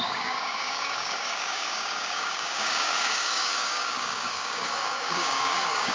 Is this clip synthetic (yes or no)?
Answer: yes